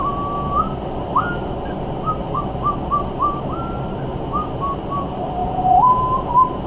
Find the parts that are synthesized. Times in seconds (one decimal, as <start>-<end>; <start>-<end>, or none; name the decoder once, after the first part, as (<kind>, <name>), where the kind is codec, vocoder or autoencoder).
5.4-6.3 (vocoder, Vocos)